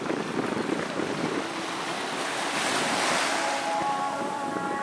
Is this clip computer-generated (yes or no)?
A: no